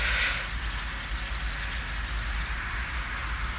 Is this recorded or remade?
recorded